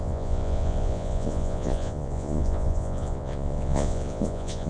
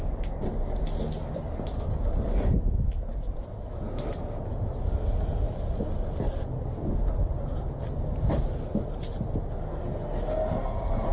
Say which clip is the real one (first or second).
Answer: second